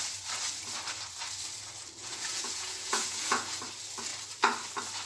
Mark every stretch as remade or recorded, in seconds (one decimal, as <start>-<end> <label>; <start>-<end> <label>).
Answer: 0.0-2.0 recorded; 2.0-3.6 remade; 3.6-5.1 recorded

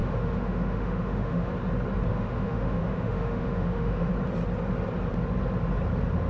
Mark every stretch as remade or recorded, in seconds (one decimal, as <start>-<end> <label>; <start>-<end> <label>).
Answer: 0.0-1.5 remade; 1.5-2.1 recorded; 2.1-4.1 remade; 4.1-6.3 recorded